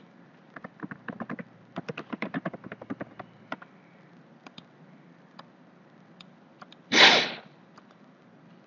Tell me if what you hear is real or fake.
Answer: fake